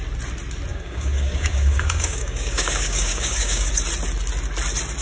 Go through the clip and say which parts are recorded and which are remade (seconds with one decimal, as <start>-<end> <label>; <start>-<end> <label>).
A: 0.0-0.7 recorded; 0.7-3.7 remade; 3.7-5.0 recorded